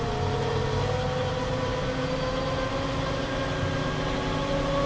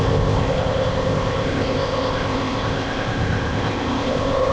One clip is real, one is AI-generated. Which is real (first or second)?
first